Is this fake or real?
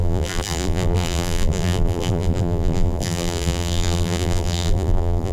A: fake